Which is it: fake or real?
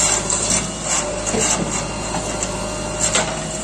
real